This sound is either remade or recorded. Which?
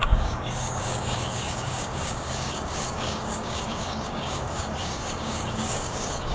remade